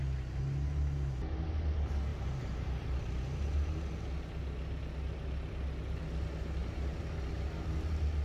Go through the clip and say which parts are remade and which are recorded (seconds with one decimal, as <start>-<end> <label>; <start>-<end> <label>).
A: 0.0-2.1 recorded; 2.1-3.8 remade; 3.8-6.6 recorded; 6.6-7.3 remade; 7.3-8.2 recorded